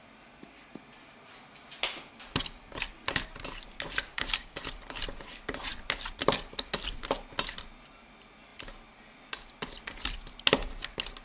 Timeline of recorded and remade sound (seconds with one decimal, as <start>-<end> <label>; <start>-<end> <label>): 0.0-4.1 recorded; 4.1-4.6 remade; 4.6-11.2 recorded